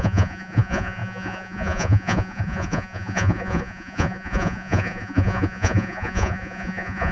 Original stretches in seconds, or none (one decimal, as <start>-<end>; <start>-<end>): none